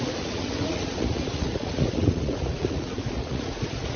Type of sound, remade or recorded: remade